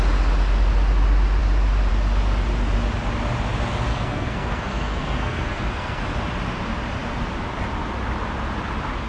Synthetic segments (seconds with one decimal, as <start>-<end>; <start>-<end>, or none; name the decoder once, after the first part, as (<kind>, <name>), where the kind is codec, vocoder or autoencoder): 3.9-6.0 (codec, SNAC)